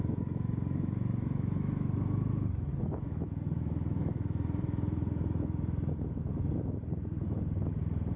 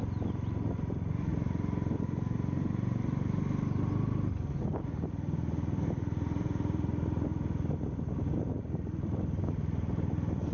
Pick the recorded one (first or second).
second